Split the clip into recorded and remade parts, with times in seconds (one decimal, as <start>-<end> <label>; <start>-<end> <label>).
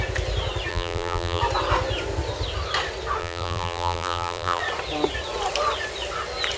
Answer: 0.0-0.7 recorded; 0.7-1.4 remade; 1.4-3.2 recorded; 3.2-4.6 remade; 4.6-6.6 recorded